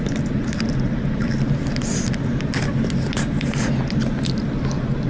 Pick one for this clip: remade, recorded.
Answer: recorded